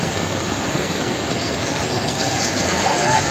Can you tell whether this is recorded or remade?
remade